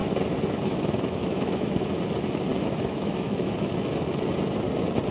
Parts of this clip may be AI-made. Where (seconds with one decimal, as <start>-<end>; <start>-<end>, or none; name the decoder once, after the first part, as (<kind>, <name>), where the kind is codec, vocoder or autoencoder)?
0.0-2.0 (autoencoder, DAC-VAE); 2.5-3.7

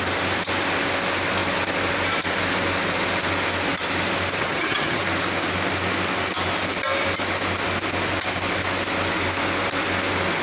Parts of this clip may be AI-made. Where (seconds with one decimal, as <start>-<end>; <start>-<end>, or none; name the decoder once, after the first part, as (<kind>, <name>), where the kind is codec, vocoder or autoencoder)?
4.4-5.0 (vocoder, HiFi-GAN)

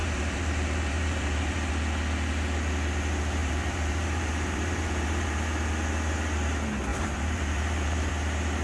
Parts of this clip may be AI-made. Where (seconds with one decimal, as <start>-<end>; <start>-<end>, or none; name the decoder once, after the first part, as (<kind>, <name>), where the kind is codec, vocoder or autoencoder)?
0.0-1.7 (vocoder, BigVGAN v2); 3.4-5.7; 6.9-8.1

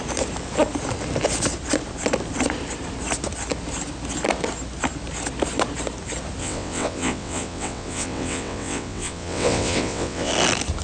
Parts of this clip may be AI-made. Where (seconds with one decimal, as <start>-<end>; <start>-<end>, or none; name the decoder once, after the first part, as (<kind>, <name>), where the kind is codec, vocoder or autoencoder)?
6.4-10.3 (vocoder, WaveNeXt)

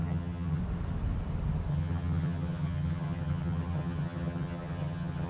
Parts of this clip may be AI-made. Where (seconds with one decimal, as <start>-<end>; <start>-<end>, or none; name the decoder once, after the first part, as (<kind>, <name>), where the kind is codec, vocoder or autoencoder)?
0.0-0.6 (vocoder, HiFi-GAN); 1.7-5.3

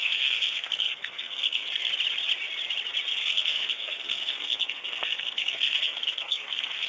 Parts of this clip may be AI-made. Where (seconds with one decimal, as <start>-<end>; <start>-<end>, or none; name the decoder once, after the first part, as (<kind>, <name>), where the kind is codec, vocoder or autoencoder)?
0.0-1.9 (codec, SNAC); 3.1-6.9